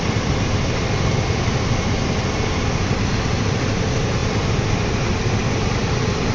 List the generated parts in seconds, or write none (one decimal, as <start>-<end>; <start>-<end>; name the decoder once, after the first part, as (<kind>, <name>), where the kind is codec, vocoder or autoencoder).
none